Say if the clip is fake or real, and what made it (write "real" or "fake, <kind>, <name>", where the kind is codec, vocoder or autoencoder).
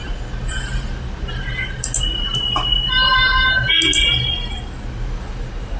real